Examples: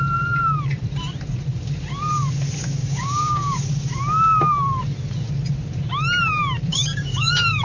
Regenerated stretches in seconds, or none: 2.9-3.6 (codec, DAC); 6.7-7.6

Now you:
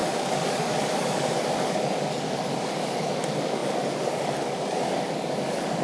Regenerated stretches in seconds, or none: 0.0-5.8 (codec, DAC)

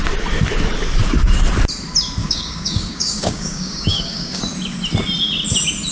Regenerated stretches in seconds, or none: 2.2-4.4 (codec, DAC)

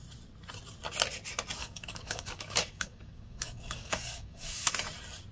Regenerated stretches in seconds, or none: 1.6-4.7 (codec, DAC)